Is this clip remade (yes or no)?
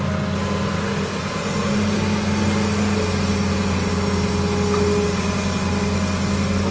no